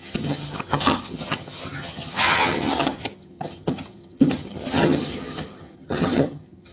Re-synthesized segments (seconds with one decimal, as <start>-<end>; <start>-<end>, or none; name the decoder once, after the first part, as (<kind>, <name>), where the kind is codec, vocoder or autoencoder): 0.0-6.7 (vocoder, HiFi-GAN)